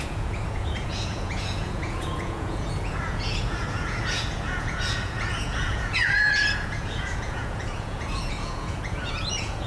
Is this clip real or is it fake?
fake